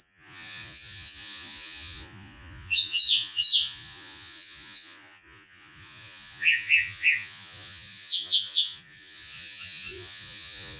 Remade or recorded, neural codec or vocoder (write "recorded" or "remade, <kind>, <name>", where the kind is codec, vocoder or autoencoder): remade, vocoder, Vocos